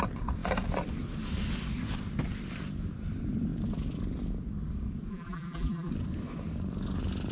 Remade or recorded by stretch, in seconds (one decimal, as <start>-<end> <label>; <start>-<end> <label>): 0.0-5.1 recorded; 5.1-5.9 remade; 5.9-7.3 recorded